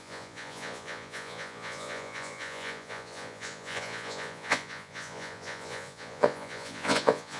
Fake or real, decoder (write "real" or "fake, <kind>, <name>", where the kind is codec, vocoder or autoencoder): fake, vocoder, Vocos